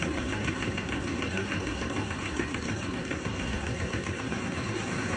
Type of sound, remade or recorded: remade